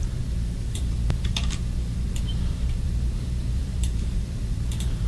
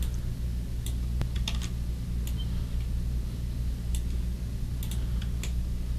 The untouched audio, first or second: second